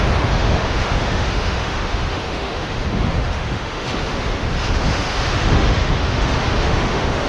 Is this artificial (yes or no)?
yes